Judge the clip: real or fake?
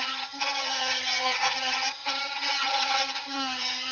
fake